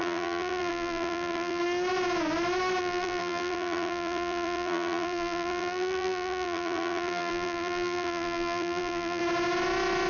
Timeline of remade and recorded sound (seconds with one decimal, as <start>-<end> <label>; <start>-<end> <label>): 0.0-1.6 remade; 1.6-2.8 recorded; 2.8-9.2 remade; 9.2-10.1 recorded